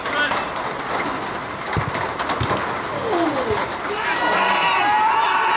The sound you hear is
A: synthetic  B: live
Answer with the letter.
B